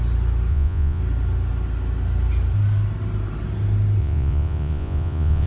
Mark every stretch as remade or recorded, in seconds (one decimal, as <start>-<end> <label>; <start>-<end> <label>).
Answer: 0.0-0.5 recorded; 0.5-1.0 remade; 1.0-4.0 recorded; 4.0-5.5 remade